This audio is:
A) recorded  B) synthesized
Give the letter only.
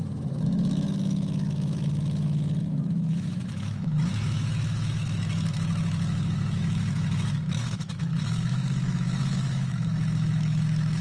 B